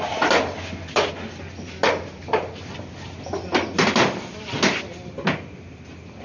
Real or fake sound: real